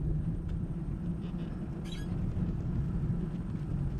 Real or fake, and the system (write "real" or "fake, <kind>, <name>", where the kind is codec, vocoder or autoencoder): real